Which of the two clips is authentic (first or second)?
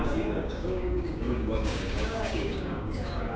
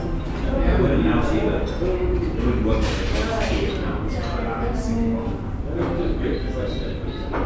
second